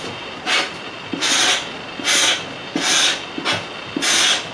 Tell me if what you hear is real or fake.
real